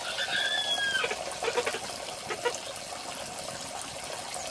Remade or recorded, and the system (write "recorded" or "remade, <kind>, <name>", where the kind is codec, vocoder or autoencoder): recorded